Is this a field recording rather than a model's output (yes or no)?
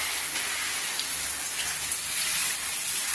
yes